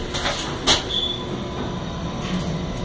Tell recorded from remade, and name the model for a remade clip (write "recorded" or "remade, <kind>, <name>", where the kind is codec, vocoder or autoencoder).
recorded